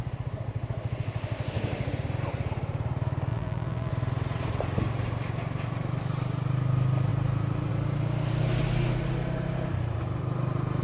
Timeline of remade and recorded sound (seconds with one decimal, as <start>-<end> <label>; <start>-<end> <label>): 0.0-3.3 recorded; 3.3-3.9 remade; 3.9-10.8 recorded